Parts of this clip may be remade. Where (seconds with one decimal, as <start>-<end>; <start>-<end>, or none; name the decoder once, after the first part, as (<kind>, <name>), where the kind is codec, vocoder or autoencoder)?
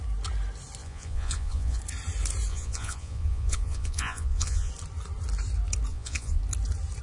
0.8-1.8 (vocoder, Vocos); 2.5-4.7; 5.9-6.4